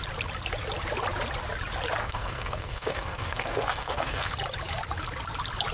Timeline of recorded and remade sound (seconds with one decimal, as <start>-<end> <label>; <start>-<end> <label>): 0.0-2.0 recorded; 2.0-4.3 remade; 4.3-5.7 recorded